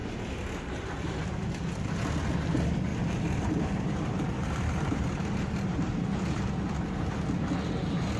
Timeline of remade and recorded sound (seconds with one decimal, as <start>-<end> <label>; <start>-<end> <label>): 0.0-2.9 recorded; 2.9-6.6 remade; 6.6-8.2 recorded